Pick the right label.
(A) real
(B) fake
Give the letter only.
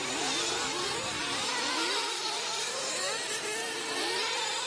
A